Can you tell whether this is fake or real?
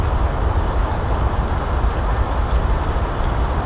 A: real